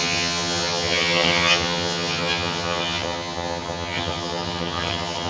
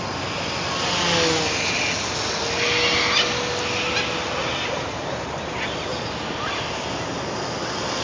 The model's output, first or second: first